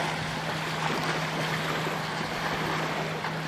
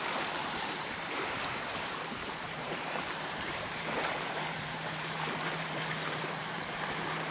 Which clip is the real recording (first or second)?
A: first